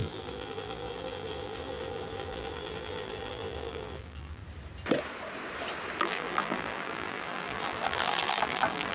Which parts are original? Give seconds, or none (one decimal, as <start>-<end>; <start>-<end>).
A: 4.4-6.0